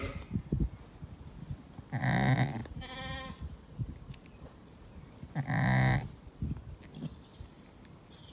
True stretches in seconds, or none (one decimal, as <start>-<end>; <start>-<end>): 0.0-8.3